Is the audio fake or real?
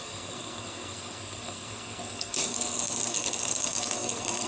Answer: fake